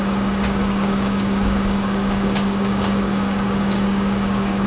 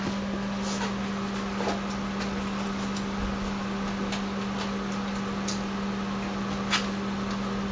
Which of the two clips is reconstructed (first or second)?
first